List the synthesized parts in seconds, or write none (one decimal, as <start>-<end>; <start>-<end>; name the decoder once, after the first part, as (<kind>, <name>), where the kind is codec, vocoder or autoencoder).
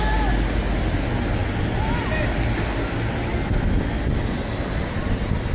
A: none